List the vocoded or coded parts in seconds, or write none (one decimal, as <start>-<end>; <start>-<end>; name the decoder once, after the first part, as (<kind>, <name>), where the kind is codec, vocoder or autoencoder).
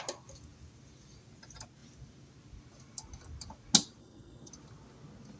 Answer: 4.0-4.5 (codec, SNAC)